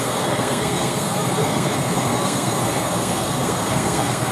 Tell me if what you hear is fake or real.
fake